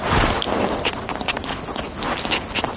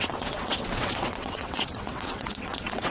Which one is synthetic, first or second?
second